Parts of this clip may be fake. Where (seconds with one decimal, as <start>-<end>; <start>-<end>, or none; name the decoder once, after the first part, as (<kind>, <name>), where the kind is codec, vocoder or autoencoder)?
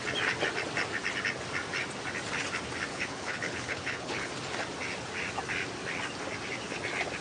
2.9-4.3 (codec, HILCodec)